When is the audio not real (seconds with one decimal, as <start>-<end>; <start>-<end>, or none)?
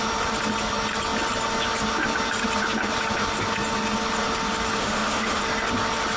4.8-5.4